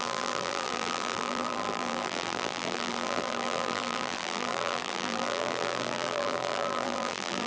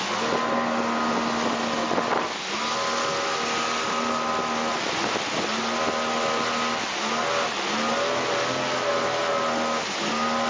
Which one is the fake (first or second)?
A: first